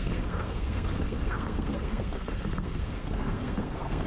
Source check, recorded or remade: remade